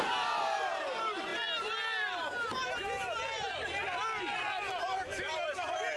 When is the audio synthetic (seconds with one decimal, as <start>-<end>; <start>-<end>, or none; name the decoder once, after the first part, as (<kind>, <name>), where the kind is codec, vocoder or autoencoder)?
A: 0.0-1.3 (vocoder, BigVGAN v2); 4.8-6.0